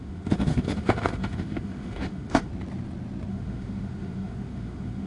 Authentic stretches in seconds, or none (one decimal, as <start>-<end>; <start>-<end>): 2.5-3.3